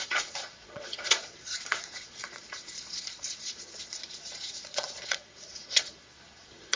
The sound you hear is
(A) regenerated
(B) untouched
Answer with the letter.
A